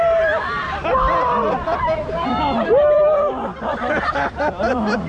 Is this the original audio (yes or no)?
no